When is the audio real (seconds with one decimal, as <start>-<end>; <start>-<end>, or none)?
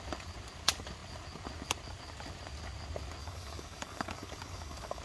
0.0-3.2